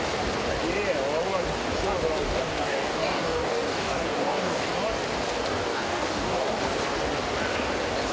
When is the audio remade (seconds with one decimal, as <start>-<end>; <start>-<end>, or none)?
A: 2.3-4.7; 5.7-6.5